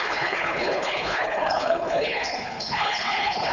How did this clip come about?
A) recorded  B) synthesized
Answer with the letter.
B